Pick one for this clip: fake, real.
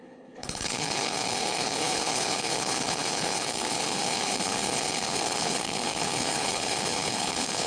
fake